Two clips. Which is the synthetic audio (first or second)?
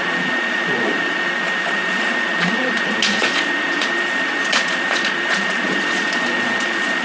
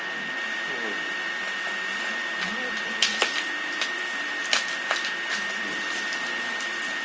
first